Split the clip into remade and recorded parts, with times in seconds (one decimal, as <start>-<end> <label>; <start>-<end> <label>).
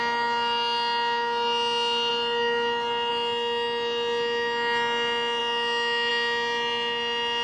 0.0-7.4 recorded